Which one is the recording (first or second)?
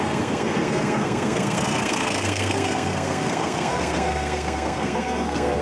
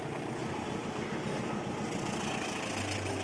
second